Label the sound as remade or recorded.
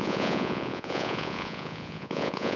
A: remade